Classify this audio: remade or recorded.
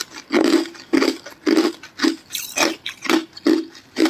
recorded